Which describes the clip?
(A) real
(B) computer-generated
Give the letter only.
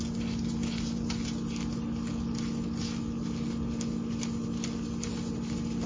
A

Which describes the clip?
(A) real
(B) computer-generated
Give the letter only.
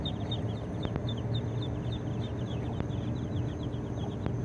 A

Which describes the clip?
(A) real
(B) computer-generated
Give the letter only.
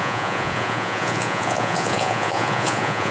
B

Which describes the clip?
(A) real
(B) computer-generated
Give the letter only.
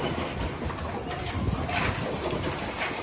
A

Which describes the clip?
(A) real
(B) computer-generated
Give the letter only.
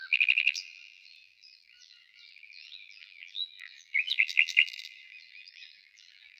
B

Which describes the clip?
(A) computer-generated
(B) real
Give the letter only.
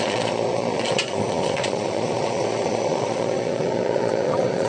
A